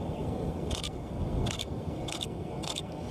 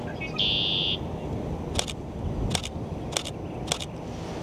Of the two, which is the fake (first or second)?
first